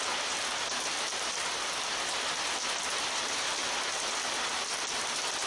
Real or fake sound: real